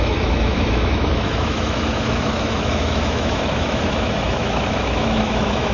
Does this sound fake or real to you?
fake